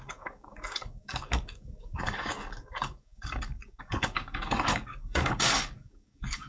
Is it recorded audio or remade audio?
remade